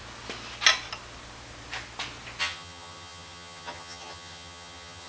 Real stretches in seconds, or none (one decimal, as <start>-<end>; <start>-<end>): 0.0-2.4